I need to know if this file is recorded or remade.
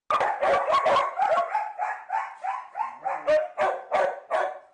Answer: recorded